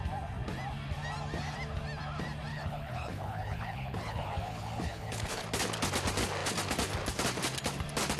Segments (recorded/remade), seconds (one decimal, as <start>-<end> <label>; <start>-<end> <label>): 0.0-2.5 recorded; 2.5-5.4 remade; 5.4-8.2 recorded